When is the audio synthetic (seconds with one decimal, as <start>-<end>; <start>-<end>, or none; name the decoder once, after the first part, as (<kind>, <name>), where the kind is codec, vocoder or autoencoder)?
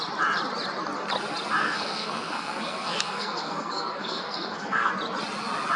1.6-4.9 (codec, SNAC)